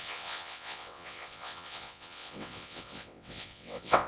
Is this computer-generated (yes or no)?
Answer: yes